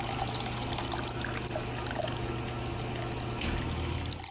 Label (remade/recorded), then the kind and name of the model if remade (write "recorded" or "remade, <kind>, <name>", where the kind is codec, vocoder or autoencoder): recorded